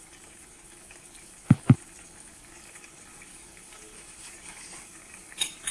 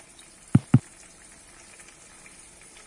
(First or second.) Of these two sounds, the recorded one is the second